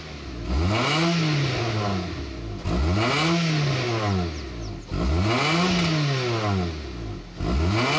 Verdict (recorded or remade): recorded